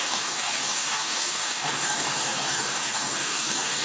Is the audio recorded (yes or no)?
no